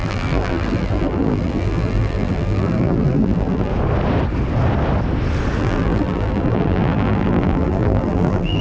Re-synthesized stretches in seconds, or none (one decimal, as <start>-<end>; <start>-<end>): 0.0-3.7; 5.6-8.6